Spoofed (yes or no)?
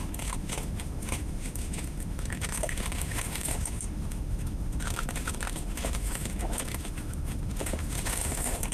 yes